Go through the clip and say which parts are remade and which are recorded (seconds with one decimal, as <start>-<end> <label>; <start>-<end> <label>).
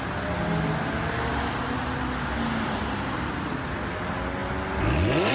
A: 0.0-5.3 recorded